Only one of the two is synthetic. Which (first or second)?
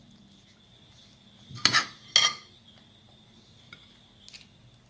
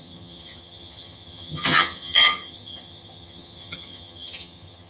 second